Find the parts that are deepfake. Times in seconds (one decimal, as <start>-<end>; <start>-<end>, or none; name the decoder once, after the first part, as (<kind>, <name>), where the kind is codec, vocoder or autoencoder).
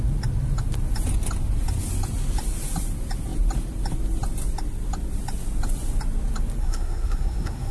6.6-7.7 (codec, SNAC)